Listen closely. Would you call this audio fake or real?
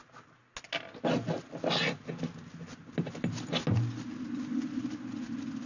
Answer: real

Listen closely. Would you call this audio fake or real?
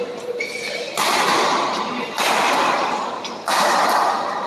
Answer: real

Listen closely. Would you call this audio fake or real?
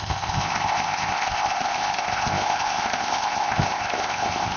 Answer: fake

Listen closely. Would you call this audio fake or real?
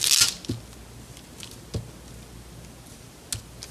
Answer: real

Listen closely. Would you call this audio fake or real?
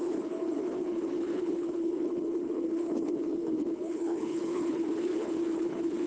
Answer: fake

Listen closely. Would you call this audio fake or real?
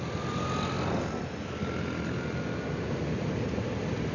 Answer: real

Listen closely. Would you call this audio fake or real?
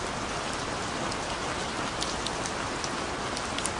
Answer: real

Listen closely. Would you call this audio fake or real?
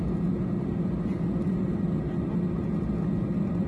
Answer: real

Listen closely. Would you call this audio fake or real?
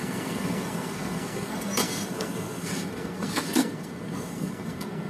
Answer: fake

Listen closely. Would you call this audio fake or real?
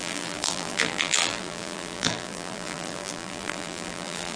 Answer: fake